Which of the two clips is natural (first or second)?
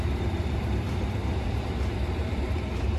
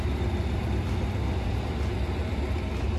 second